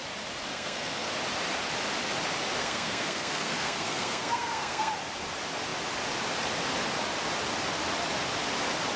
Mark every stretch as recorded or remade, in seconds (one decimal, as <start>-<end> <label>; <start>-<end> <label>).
0.0-0.5 recorded; 0.5-1.1 remade; 1.1-2.6 recorded; 2.6-4.9 remade; 4.9-9.0 recorded